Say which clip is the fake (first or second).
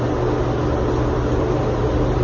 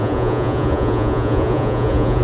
second